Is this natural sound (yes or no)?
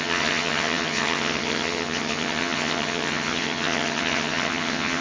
no